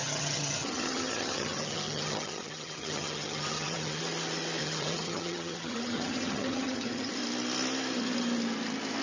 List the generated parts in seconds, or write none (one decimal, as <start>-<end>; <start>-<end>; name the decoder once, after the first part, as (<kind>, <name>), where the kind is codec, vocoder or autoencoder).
0.0-4.0 (vocoder, HiFi-GAN); 4.6-7.1